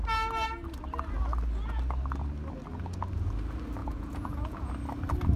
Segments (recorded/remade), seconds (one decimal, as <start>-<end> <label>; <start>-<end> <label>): 0.0-3.8 recorded; 3.8-4.7 remade; 4.7-5.4 recorded